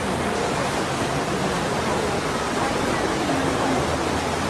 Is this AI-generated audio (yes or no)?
no